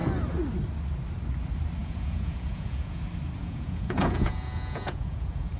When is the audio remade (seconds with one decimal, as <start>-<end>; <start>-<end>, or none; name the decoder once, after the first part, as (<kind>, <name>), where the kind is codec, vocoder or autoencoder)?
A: 1.8-3.0 (vocoder, Vocos); 3.4-5.6